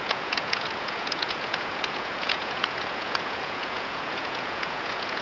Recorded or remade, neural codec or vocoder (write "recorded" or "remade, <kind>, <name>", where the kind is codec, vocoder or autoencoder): remade, vocoder, Vocos